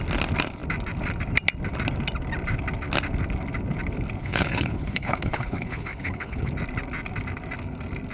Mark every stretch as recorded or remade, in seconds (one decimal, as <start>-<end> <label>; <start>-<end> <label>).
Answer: 0.0-4.2 recorded; 4.2-6.5 remade; 6.5-8.1 recorded